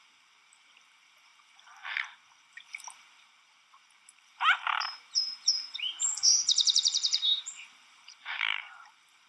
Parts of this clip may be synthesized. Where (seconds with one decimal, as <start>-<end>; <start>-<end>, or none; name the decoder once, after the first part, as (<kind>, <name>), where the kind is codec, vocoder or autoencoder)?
0.0-9.3 (vocoder, BigVGAN v2)